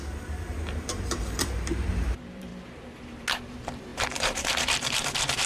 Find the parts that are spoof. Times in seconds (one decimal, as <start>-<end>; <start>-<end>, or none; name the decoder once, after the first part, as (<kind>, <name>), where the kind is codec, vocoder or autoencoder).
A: 0.0-2.5 (vocoder, BigVGAN v2); 3.4-5.5